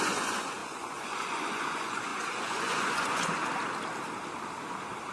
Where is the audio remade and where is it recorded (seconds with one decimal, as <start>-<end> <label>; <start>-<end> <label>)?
0.0-3.4 remade; 3.4-5.1 recorded